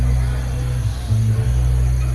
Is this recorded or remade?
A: recorded